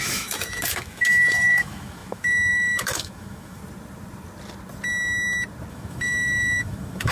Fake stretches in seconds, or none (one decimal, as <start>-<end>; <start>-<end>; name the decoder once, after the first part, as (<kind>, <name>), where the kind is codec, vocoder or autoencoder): 0.0-3.6 (autoencoder, DAC-VAE); 5.7-7.1